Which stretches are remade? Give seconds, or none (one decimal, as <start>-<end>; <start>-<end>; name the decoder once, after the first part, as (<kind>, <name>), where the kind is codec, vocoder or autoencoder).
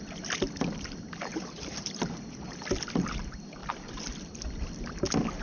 1.3-2.6 (vocoder, BigVGAN v2)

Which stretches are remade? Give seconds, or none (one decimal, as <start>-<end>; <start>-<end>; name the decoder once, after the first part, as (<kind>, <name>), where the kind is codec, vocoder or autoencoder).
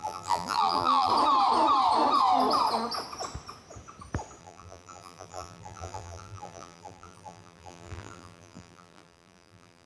0.0-1.1 (vocoder, BigVGAN v2); 4.4-9.9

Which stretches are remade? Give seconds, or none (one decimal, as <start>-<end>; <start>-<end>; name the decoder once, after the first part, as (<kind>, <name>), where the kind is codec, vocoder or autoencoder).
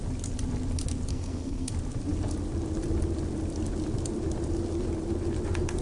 1.1-1.7 (codec, SNAC)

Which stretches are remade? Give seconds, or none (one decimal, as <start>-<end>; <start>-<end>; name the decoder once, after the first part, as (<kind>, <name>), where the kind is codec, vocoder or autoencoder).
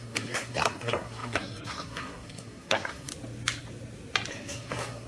0.0-3.1 (codec, SNAC); 4.3-5.1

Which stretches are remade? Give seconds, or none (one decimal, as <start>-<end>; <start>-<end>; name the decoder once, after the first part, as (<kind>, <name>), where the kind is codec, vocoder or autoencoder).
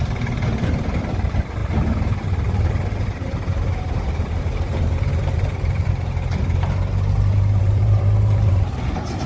0.0-1.6 (vocoder, BigVGAN v2); 4.1-6.4; 7.6-9.3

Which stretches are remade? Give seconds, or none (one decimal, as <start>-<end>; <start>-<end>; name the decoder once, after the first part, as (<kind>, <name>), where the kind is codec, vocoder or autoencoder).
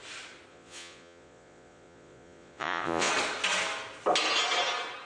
0.5-3.1 (vocoder, Vocos)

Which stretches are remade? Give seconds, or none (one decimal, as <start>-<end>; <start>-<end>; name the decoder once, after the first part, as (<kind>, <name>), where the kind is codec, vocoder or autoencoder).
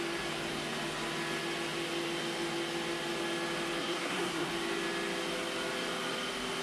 3.8-4.5 (codec, SNAC)